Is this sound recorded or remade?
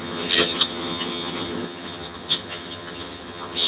remade